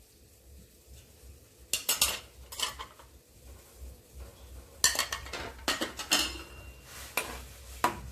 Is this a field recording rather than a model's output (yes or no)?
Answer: yes